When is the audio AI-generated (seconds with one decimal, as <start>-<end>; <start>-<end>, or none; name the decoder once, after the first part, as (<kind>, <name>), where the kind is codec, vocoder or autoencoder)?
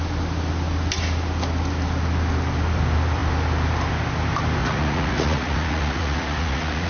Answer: 4.6-6.9 (vocoder, Vocos)